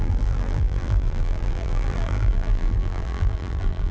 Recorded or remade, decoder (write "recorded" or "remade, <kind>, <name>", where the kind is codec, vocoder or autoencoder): remade, vocoder, BigVGAN v2